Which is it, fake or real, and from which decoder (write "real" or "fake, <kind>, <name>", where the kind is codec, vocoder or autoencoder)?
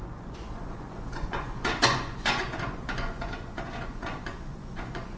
fake, vocoder, Vocos